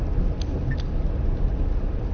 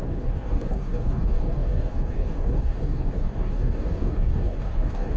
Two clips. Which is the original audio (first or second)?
first